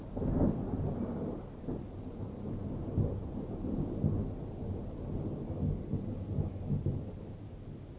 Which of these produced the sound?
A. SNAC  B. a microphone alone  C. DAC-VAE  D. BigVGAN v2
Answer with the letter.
B